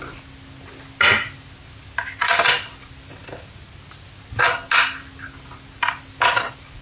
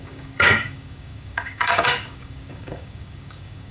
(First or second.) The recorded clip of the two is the first